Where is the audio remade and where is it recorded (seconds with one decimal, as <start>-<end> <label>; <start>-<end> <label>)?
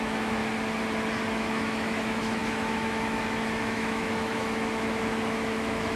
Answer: 0.0-0.4 remade; 0.4-1.3 recorded; 1.3-6.0 remade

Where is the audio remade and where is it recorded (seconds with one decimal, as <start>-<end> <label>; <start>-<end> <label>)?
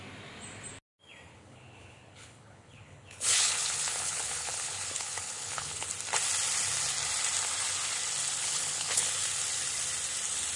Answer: 0.0-1.3 recorded; 1.3-5.9 remade; 5.9-8.4 recorded; 8.4-9.1 remade; 9.1-10.6 recorded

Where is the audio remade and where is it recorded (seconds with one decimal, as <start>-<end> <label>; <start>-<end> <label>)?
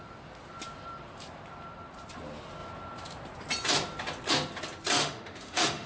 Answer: 0.0-5.0 recorded; 5.0-5.9 remade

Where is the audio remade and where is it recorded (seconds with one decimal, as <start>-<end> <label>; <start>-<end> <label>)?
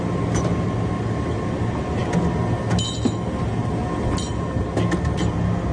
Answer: 0.0-5.7 recorded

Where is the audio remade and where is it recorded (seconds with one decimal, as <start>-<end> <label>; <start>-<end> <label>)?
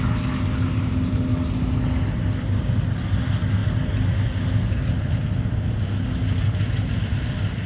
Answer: 0.0-7.7 recorded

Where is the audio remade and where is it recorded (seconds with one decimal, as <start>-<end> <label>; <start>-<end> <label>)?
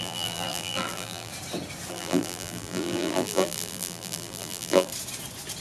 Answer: 0.0-1.3 remade; 1.3-1.9 recorded; 1.9-4.9 remade; 4.9-5.6 recorded